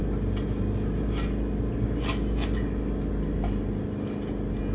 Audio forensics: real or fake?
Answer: real